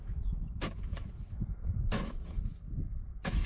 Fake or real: fake